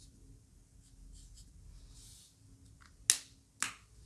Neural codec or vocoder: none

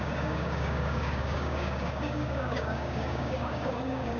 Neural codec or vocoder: codec, DAC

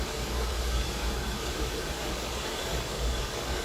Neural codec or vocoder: codec, DAC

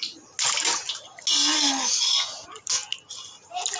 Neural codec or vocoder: none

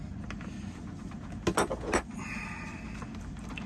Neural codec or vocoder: none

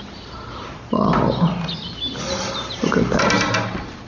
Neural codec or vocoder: none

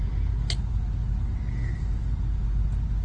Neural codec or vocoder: none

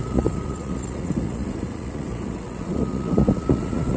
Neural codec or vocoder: vocoder, Vocos